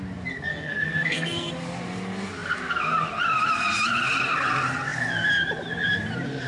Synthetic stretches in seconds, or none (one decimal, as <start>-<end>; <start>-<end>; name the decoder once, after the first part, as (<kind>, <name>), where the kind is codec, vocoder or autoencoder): 0.5-1.5 (codec, SNAC)